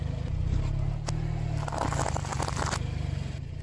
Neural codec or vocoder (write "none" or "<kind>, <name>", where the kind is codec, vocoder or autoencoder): none